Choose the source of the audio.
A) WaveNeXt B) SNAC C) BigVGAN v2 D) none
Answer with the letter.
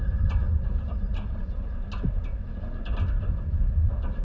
D